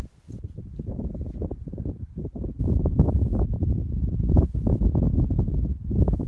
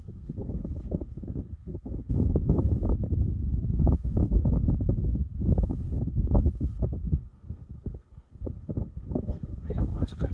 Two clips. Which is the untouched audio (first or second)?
first